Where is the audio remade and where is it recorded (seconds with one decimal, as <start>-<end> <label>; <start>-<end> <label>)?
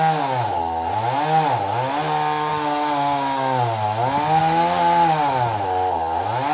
0.0-6.5 recorded